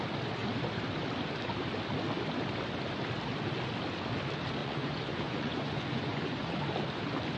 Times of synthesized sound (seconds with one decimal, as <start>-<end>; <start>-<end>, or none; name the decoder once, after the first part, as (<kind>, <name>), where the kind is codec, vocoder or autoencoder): 4.6-6.6 (vocoder, Vocos)